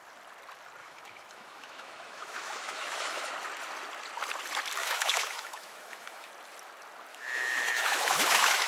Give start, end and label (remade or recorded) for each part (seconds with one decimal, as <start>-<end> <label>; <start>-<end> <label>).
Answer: 0.0-0.8 recorded; 0.8-3.3 remade; 3.3-4.8 recorded; 4.8-6.3 remade; 6.3-7.1 recorded; 7.1-8.7 remade